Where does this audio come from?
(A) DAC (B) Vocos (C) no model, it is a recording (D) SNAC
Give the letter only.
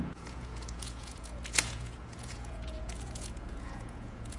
B